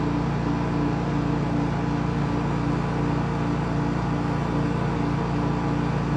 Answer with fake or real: real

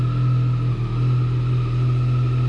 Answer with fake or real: real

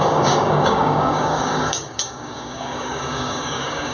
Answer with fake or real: fake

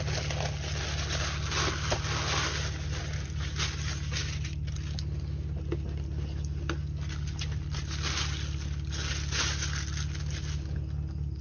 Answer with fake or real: real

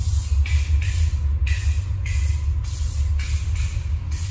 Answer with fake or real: real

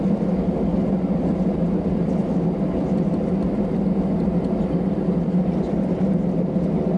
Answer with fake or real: real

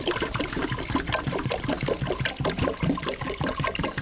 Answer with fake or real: real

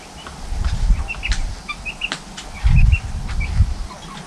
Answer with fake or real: real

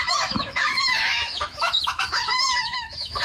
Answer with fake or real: fake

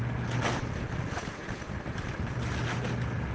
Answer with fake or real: real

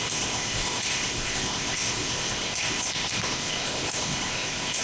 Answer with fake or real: fake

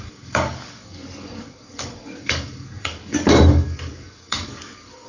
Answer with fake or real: fake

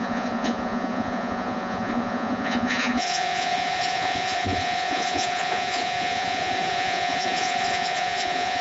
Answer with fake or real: fake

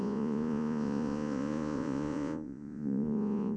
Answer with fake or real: fake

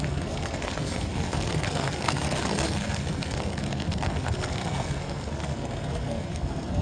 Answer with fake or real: fake